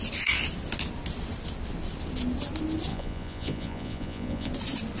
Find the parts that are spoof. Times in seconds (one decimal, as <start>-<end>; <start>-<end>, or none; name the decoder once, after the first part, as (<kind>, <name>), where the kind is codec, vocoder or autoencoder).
2.9-4.5 (vocoder, Vocos)